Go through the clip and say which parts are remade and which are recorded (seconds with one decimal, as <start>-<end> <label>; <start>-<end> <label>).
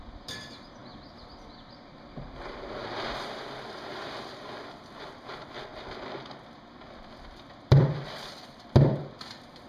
0.0-9.7 recorded